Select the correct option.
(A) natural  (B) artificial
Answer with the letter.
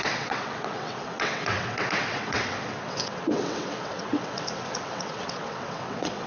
B